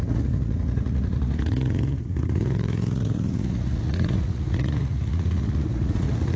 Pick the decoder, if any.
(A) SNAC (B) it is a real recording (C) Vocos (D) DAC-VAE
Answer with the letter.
C